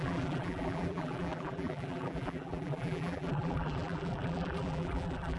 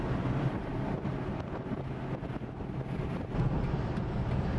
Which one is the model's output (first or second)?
first